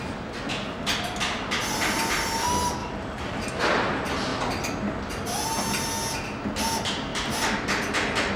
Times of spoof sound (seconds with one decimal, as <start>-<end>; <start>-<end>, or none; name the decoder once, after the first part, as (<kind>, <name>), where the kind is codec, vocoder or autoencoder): 2.8-3.4 (vocoder, BigVGAN v2)